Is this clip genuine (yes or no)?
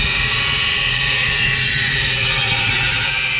no